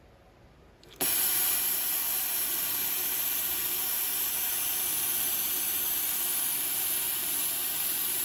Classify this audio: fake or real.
real